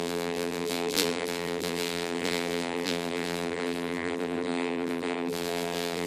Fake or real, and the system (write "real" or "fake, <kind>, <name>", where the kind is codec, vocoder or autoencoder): fake, vocoder, BigVGAN v2